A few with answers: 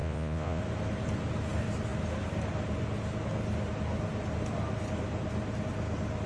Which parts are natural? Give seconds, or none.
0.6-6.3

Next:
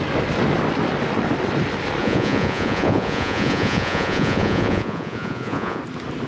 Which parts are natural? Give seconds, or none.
0.0-2.0; 5.8-6.3